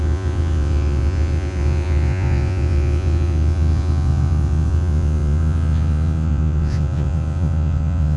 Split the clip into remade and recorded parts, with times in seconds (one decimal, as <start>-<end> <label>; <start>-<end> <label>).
0.0-8.2 remade